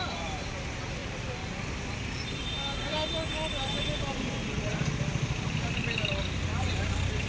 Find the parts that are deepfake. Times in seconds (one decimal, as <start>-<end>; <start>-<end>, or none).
none